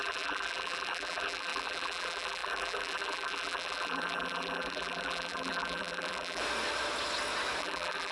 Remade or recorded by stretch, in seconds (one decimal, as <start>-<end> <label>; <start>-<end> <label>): 0.0-6.4 remade; 6.4-7.6 recorded; 7.6-8.1 remade